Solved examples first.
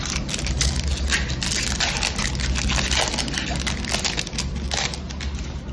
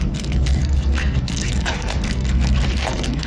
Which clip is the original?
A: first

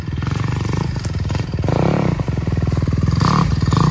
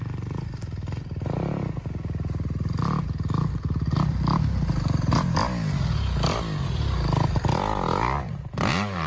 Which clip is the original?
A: second